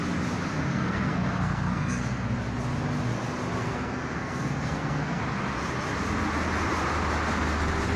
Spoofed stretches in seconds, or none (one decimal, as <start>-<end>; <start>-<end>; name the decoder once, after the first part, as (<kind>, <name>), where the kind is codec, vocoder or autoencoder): 0.7-2.2 (codec, SNAC); 3.6-5.2